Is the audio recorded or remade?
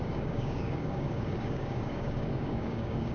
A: remade